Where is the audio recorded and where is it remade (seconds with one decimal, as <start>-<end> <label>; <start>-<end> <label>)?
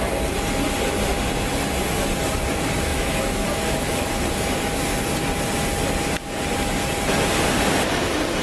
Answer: 0.0-2.9 recorded; 2.9-4.1 remade; 4.1-8.4 recorded